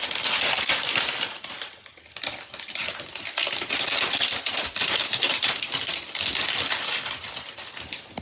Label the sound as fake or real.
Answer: real